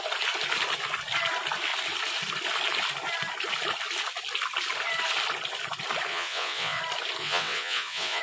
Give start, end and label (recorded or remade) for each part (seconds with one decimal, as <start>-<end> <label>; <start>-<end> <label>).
0.0-6.1 recorded; 6.1-6.8 remade; 6.8-7.2 recorded; 7.2-8.2 remade